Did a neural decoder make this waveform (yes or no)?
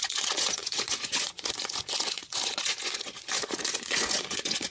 yes